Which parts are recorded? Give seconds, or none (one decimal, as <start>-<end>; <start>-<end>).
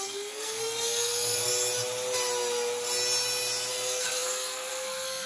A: 1.5-3.7